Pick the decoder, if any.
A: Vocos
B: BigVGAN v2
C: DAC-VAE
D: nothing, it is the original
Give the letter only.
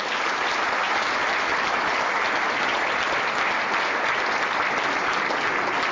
D